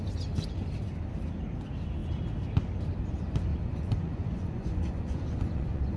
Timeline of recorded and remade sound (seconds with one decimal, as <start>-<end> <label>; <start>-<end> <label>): 0.0-3.5 recorded; 3.5-6.0 remade